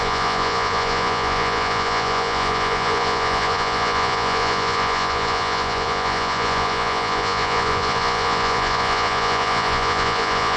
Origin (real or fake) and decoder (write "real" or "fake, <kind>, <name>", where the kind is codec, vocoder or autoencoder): fake, vocoder, Vocos